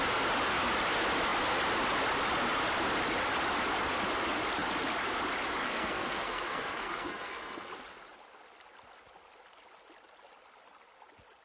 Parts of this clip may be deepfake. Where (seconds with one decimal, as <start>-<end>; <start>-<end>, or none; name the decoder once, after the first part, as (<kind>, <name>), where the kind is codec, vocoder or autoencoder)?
5.6-7.7 (codec, SNAC)

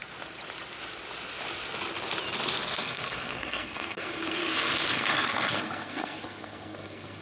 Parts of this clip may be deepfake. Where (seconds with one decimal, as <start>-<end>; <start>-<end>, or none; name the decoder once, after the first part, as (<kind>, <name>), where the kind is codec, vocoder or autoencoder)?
2.8-7.2 (codec, SNAC)

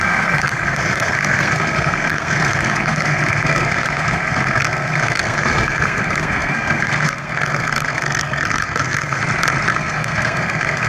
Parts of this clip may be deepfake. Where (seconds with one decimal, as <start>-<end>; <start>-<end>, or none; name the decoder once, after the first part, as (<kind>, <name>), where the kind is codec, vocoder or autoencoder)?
0.0-9.2 (codec, SNAC); 9.7-10.9

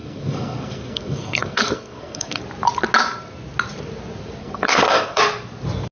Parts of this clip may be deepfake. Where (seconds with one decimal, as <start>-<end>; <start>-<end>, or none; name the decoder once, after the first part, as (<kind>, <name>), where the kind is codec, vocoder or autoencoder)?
0.0-2.4 (codec, SNAC); 4.4-5.2